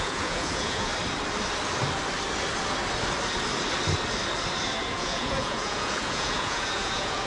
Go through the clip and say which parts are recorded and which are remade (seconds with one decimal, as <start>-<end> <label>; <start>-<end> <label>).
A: 0.0-0.9 remade; 0.9-4.9 recorded; 4.9-7.3 remade